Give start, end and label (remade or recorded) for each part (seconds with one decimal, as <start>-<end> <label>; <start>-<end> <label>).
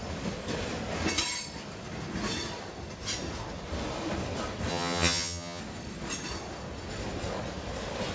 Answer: 0.0-4.7 recorded; 4.7-5.6 remade; 5.6-8.1 recorded